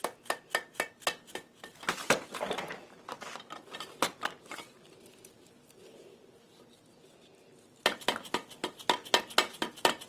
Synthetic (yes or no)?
no